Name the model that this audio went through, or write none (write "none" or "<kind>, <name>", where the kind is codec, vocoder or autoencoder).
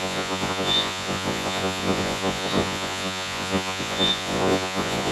vocoder, Vocos